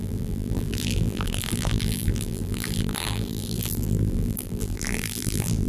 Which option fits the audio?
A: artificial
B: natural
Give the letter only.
A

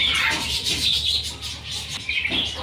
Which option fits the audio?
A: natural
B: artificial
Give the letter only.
A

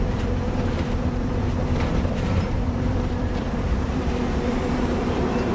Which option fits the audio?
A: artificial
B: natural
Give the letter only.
A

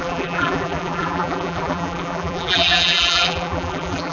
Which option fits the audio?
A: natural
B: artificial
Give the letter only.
B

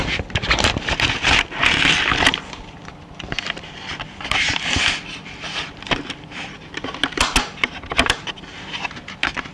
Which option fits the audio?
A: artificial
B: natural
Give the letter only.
B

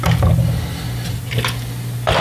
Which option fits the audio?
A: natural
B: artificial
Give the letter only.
A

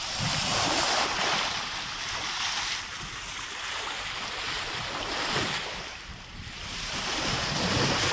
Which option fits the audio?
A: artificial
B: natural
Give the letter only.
A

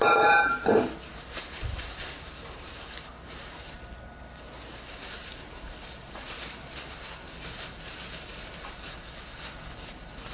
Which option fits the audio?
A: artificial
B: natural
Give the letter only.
A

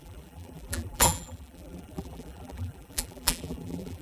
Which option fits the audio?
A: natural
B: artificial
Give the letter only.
B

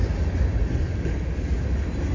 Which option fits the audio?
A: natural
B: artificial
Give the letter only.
A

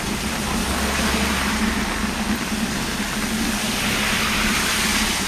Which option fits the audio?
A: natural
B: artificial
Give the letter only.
A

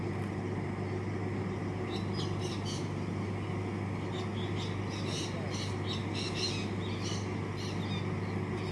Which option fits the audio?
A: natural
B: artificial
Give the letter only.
A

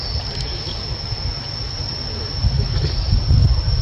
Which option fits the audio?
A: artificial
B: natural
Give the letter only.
B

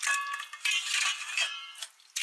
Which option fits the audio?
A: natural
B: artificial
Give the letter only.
B